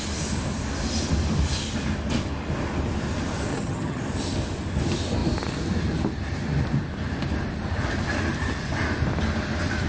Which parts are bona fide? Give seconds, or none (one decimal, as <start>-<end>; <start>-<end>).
0.0-3.5; 4.0-9.9